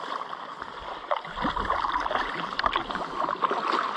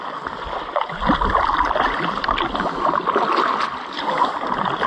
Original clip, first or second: second